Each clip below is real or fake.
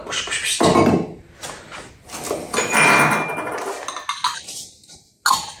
real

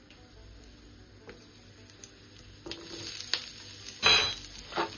real